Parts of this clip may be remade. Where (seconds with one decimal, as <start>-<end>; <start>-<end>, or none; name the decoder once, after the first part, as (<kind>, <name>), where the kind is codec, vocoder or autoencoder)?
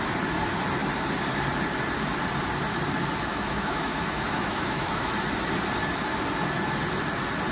3.3-5.1 (autoencoder, DAC-VAE)